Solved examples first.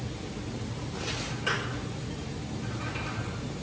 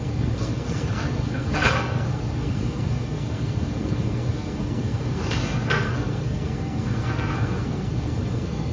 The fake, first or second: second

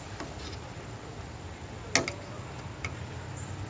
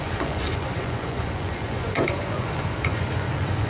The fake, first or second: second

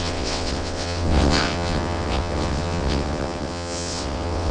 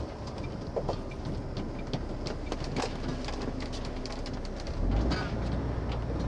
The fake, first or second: first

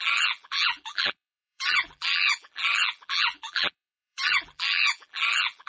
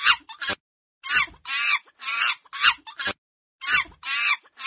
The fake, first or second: first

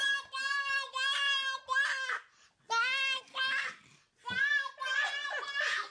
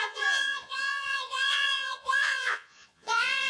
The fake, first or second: second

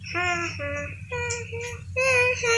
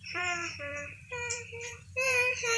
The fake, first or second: second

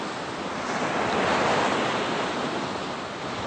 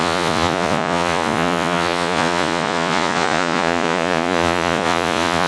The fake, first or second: second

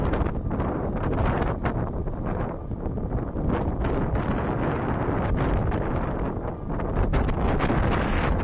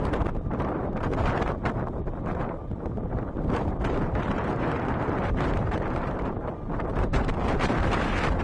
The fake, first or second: second